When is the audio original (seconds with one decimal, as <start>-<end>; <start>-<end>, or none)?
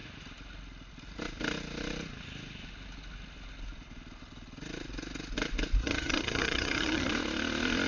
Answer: 0.0-5.8; 7.1-7.9